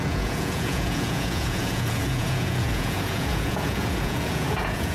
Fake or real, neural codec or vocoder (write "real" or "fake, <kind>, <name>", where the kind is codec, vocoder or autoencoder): fake, vocoder, Vocos